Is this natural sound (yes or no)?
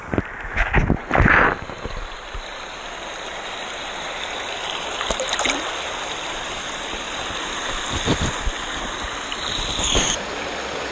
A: yes